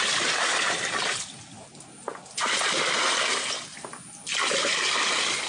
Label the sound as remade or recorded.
recorded